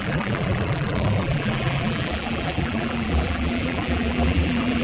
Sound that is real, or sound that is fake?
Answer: fake